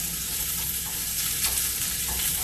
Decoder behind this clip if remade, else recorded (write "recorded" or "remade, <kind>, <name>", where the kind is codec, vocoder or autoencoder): remade, vocoder, BigVGAN v2